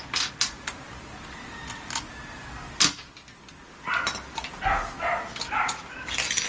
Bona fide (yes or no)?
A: yes